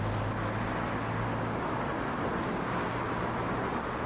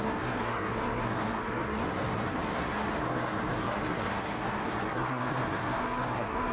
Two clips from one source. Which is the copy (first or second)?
second